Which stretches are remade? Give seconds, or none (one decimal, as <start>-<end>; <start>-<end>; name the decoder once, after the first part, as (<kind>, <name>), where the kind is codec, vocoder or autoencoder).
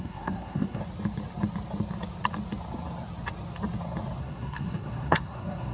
0.0-0.8 (codec, SNAC); 4.2-5.7